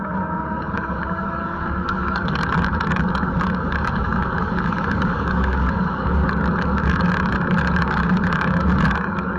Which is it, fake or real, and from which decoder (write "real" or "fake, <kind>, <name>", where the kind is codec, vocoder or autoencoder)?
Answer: fake, codec, DAC